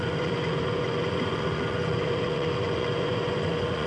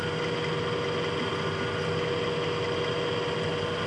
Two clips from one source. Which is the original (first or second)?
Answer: second